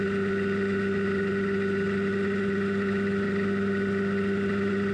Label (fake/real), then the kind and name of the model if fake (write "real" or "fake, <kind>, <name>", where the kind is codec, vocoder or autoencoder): real